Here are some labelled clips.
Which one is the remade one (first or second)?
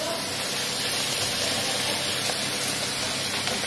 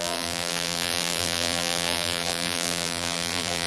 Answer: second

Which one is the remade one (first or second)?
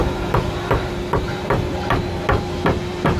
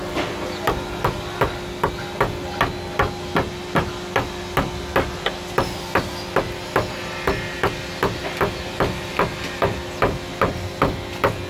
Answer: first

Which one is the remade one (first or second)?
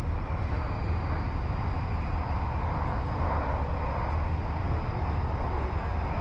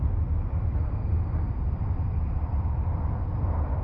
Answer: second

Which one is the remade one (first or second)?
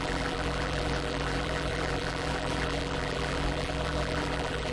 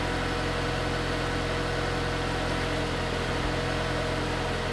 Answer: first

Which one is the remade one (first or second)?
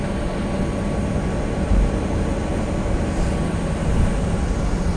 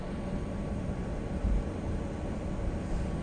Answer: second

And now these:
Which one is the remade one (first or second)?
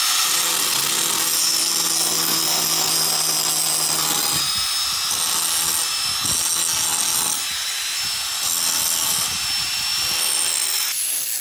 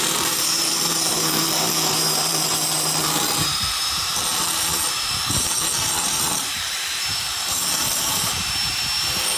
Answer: second